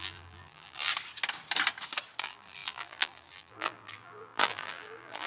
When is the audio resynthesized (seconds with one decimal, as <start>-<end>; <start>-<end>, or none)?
0.0-0.9; 2.2-5.3